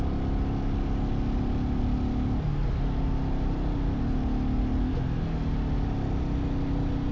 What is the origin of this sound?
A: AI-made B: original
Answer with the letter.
B